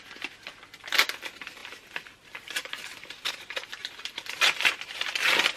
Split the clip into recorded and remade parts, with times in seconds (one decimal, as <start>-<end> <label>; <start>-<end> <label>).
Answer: 0.0-5.6 recorded